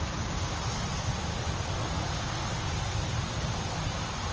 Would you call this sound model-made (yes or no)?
no